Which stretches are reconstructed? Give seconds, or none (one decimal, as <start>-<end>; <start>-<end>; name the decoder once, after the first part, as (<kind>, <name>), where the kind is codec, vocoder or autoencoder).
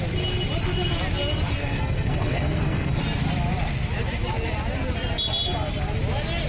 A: 1.6-3.0 (codec, SNAC)